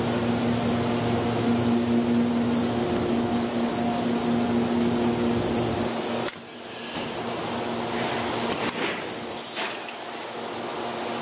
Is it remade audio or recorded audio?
recorded